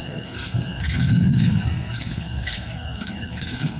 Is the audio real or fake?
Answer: fake